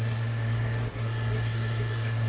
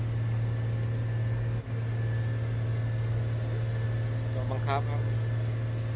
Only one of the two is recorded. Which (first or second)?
second